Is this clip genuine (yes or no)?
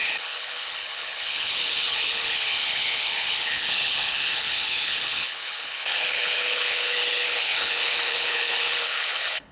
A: no